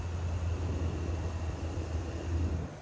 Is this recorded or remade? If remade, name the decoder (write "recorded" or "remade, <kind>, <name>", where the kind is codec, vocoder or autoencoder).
recorded